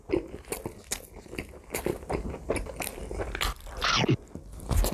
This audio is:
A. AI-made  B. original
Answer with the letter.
B